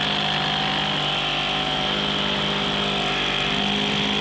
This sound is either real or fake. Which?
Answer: real